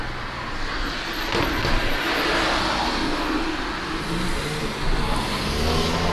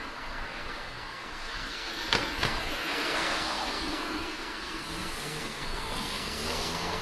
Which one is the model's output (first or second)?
second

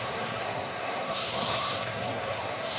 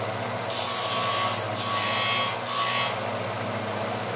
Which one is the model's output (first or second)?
first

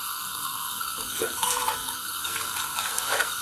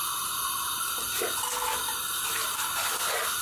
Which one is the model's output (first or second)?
first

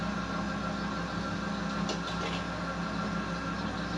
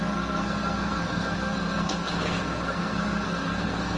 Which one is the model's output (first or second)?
second